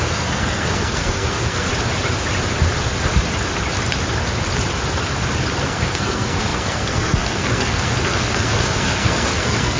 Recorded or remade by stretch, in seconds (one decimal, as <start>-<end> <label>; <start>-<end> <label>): 0.0-1.7 remade; 1.7-5.6 recorded; 5.6-9.8 remade

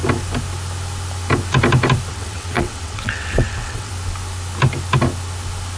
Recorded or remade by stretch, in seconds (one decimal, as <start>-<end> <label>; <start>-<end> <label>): 0.0-2.1 recorded; 2.1-3.9 remade; 3.9-5.8 recorded

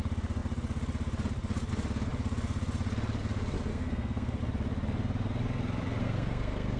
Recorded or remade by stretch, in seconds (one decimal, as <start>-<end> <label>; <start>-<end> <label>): 0.0-3.7 recorded; 3.7-4.4 remade; 4.4-6.0 recorded; 6.0-6.8 remade

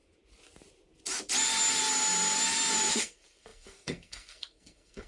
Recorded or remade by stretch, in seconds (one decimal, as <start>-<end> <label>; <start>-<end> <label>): 0.0-2.9 recorded; 2.9-5.1 remade

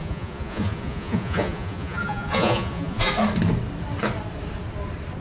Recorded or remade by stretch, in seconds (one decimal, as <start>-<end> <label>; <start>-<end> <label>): 0.0-3.1 remade; 3.1-5.2 recorded